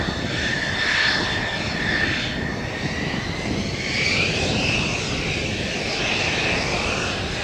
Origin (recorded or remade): recorded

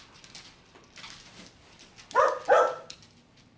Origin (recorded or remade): recorded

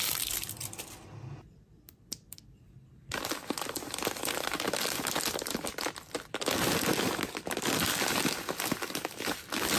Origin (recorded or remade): recorded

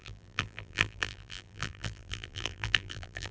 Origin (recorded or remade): remade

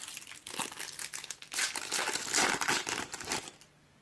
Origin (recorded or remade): remade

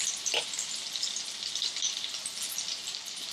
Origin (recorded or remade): recorded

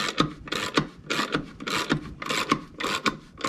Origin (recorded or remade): recorded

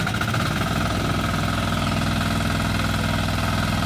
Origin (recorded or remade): recorded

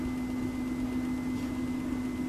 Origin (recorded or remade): recorded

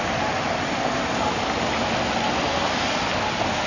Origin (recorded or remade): recorded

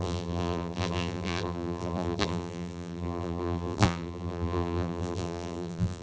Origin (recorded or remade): remade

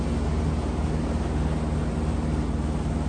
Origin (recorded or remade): recorded